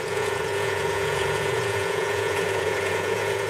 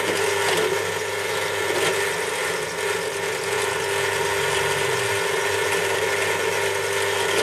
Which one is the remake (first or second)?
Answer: first